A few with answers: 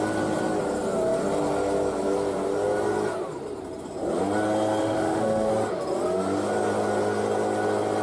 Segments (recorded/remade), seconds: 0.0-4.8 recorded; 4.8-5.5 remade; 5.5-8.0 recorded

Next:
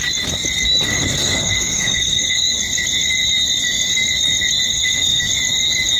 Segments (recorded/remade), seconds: 0.0-0.9 recorded; 0.9-2.6 remade; 2.6-4.7 recorded; 4.7-5.2 remade; 5.2-6.0 recorded

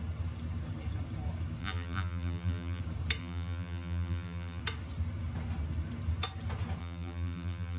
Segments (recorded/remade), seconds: 0.0-1.6 recorded; 1.6-2.8 remade; 2.8-3.2 recorded; 3.2-4.6 remade; 4.6-6.8 recorded; 6.8-7.8 remade